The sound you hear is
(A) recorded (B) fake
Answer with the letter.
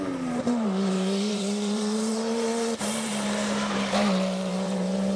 B